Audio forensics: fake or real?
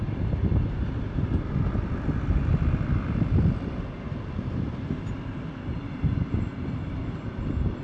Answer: real